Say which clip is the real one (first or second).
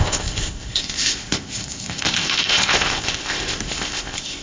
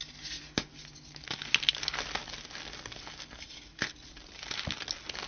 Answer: second